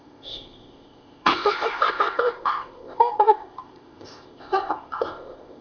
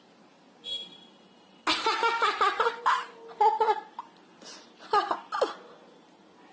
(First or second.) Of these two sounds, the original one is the second